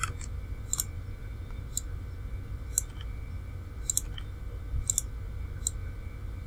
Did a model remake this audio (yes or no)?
no